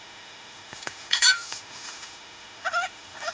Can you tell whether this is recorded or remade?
remade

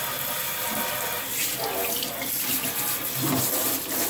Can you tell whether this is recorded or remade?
recorded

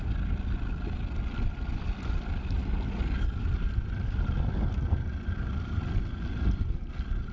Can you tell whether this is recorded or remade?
recorded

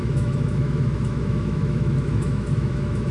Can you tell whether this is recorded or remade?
remade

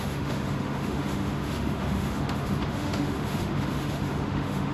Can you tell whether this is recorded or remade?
remade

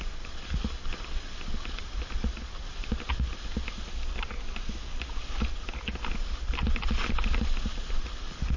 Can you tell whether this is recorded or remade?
recorded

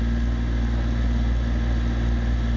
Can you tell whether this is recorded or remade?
recorded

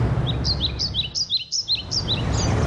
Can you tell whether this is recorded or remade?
recorded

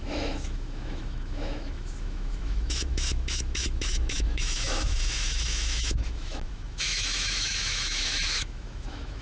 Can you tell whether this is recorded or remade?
remade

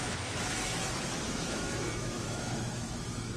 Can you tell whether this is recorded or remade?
remade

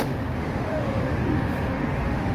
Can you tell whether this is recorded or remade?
remade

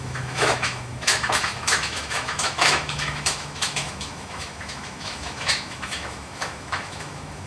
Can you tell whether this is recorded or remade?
remade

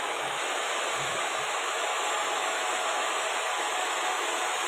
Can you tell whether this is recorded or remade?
remade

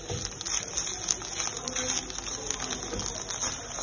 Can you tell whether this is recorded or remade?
recorded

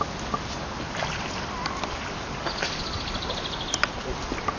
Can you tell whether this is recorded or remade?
recorded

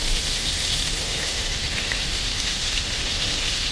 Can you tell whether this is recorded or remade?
remade